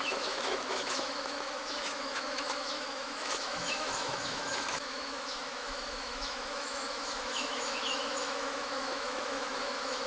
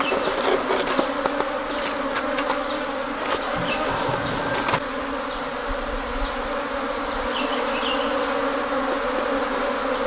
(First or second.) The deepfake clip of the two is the first